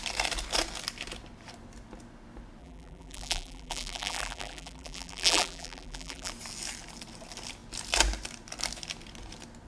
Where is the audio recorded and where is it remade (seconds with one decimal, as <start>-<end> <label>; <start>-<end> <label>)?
0.0-2.6 recorded; 2.6-6.3 remade; 6.3-9.7 recorded